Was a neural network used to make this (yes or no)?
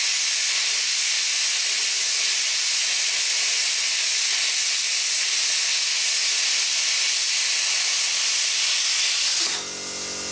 no